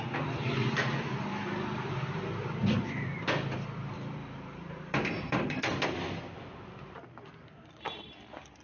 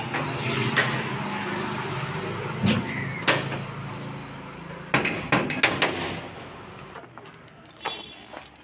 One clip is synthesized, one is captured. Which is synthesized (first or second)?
first